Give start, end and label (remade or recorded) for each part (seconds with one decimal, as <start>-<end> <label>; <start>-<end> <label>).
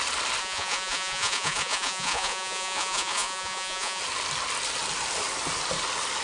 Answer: 0.0-0.4 recorded; 0.4-4.0 remade; 4.0-6.2 recorded